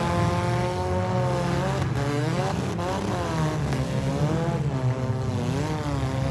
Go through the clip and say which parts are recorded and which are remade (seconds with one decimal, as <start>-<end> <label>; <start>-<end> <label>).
0.0-2.1 recorded; 2.1-2.7 remade; 2.7-3.6 recorded; 3.6-4.1 remade; 4.1-6.3 recorded